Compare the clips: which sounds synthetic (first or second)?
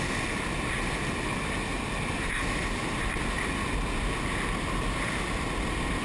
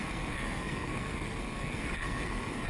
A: second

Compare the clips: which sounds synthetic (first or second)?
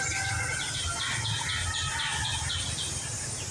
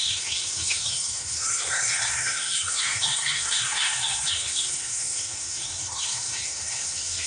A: second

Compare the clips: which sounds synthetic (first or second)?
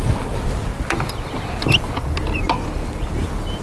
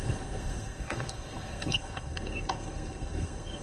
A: second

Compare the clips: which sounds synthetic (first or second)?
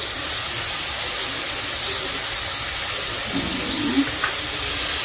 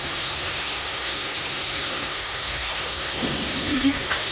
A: second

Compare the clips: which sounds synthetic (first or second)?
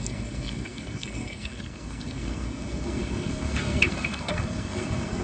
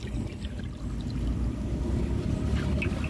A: first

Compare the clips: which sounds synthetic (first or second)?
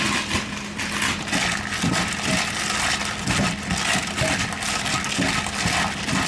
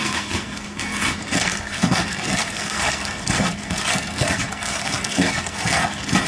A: second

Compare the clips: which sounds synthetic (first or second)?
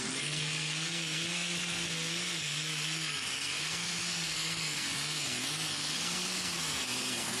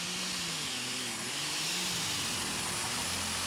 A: first